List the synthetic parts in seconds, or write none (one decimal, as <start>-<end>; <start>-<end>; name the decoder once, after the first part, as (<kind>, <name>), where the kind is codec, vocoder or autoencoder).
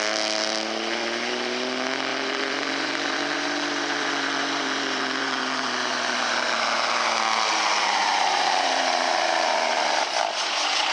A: 2.1-6.9 (vocoder, BigVGAN v2); 8.0-10.2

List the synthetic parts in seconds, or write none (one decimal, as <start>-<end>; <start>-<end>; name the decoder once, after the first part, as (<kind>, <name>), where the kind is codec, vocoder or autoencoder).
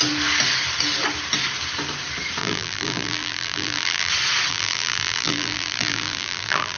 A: 2.4-4.1 (vocoder, BigVGAN v2); 4.5-6.8